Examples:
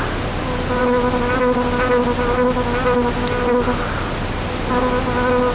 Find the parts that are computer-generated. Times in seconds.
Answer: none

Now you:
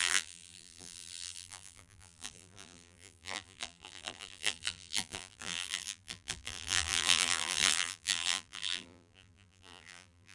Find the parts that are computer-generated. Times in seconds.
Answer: 0.0-10.3

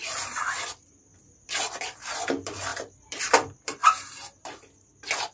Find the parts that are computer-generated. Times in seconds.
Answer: 0.0-1.1; 1.6-3.8; 4.4-5.3

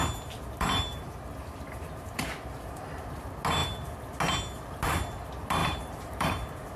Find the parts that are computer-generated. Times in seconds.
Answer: 0.9-2.8; 5.6-6.3

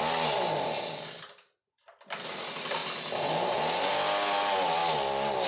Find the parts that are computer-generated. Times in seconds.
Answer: 2.8-3.9

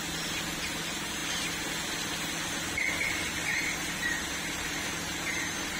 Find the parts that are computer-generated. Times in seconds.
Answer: 3.5-5.8

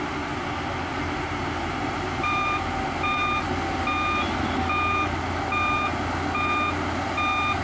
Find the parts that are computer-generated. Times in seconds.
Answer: 0.9-2.8